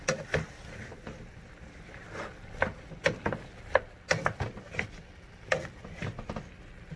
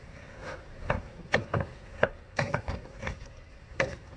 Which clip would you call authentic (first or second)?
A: first